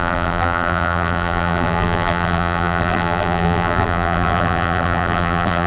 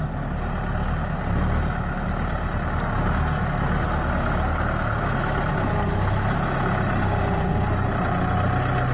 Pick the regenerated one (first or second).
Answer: first